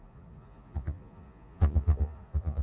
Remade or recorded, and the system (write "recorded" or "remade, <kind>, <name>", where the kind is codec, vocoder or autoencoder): remade, vocoder, Vocos